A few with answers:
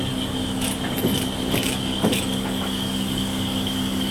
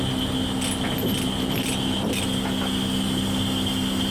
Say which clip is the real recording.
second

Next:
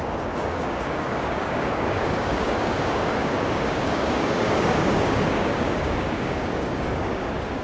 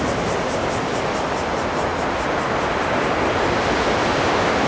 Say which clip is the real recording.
second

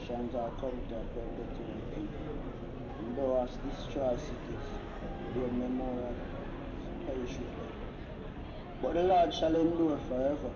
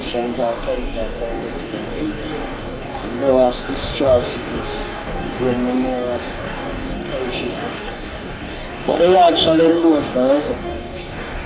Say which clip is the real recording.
first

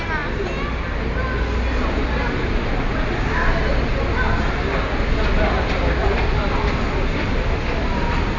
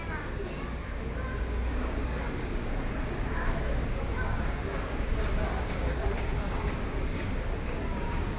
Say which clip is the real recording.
first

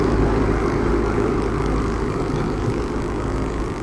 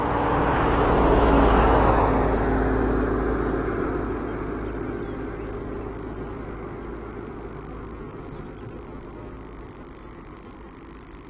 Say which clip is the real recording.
second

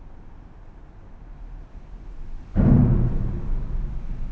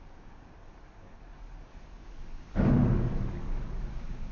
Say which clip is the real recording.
first